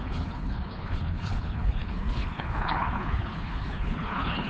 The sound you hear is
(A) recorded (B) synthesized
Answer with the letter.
B